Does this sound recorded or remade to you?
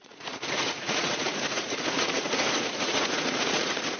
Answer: remade